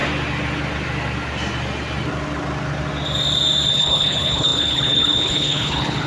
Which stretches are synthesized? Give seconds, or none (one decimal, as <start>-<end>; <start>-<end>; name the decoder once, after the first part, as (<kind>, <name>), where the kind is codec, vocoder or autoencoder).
3.7-6.1 (codec, HILCodec)